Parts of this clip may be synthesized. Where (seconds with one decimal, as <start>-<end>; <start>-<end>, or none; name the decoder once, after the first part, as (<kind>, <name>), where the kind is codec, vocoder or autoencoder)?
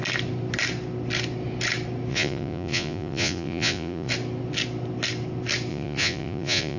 2.1-4.1 (vocoder, Vocos); 5.7-6.8